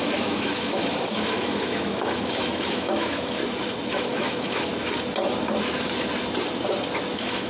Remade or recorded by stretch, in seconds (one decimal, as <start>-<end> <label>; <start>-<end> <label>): 0.0-3.4 remade; 3.4-4.0 recorded; 4.0-4.7 remade; 4.7-7.1 recorded; 7.1-7.5 remade